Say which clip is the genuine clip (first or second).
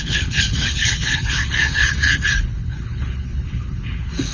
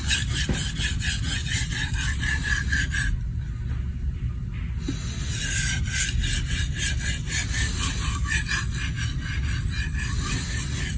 second